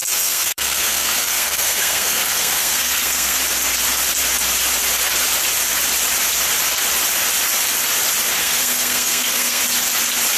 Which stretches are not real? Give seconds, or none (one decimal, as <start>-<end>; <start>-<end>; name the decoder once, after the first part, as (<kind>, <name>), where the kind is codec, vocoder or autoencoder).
0.0-3.4 (codec, SNAC); 8.4-9.6